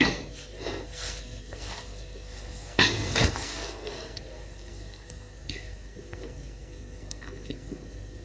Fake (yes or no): yes